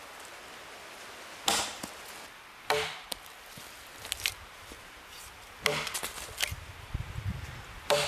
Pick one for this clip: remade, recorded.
recorded